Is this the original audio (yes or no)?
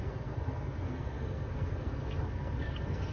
no